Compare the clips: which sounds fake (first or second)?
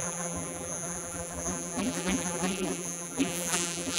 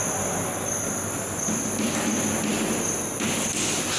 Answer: first